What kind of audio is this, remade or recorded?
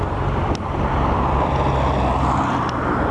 remade